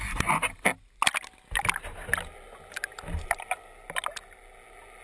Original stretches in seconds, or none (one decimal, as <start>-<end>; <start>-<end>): 0.0-5.0